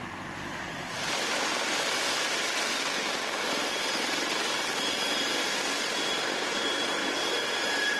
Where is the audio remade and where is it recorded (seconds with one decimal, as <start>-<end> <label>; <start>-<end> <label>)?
0.0-2.4 remade; 2.4-3.4 recorded; 3.4-8.0 remade